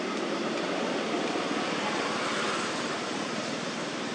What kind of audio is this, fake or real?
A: real